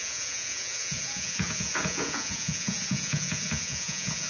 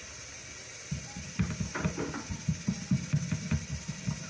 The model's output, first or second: first